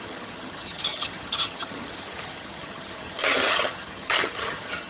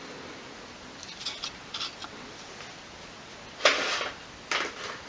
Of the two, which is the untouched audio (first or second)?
second